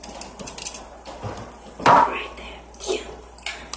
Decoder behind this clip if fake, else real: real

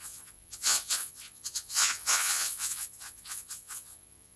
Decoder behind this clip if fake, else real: fake, vocoder, Vocos